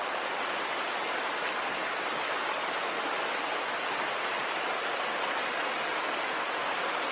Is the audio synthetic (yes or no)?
no